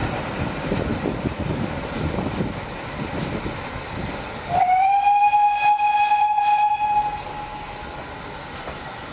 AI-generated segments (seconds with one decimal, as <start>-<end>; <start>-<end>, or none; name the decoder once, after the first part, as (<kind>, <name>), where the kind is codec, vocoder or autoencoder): none